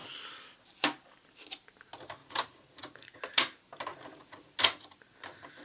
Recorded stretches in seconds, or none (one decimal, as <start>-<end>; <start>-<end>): 0.0-2.2; 3.2-3.9; 4.6-5.6